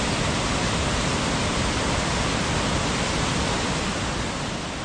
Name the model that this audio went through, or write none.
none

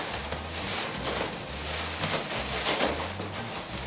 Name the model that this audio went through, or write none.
none